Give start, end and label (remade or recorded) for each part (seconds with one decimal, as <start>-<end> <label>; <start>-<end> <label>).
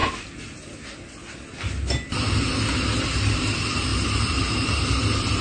0.0-5.4 recorded